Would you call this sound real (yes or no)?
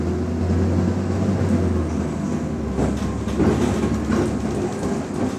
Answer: yes